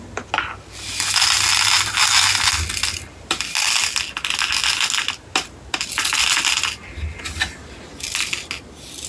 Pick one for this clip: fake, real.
real